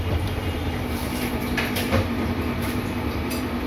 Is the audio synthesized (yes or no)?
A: yes